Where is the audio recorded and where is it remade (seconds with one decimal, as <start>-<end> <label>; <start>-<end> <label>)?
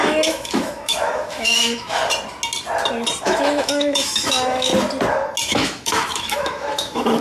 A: 0.0-2.0 remade; 2.0-3.2 recorded; 3.2-4.7 remade; 4.7-5.4 recorded; 5.4-7.2 remade